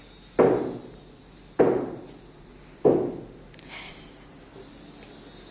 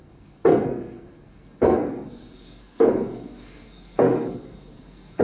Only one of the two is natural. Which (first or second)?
first